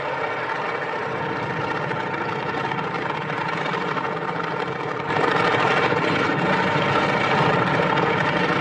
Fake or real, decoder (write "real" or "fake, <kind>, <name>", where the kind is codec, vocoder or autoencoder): fake, vocoder, BigVGAN v2